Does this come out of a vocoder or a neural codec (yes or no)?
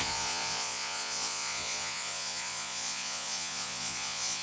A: yes